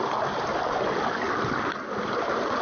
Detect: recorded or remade recorded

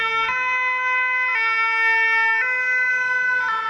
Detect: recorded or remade recorded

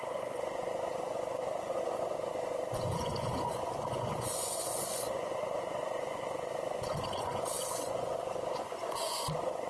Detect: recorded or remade remade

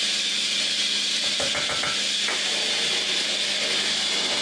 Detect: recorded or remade recorded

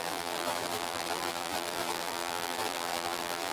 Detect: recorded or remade remade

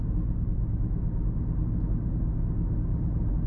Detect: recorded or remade recorded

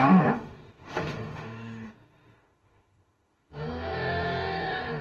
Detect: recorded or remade remade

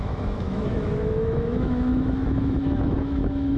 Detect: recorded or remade remade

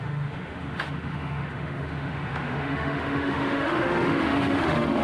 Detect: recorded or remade remade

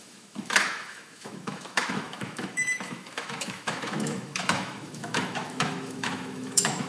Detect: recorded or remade remade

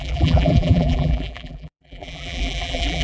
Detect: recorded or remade remade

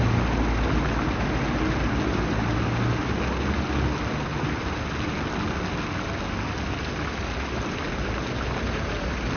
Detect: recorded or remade recorded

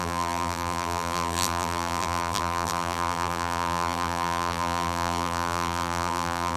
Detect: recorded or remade remade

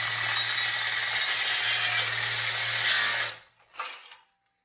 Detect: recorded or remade recorded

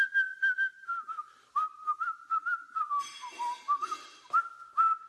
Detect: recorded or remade recorded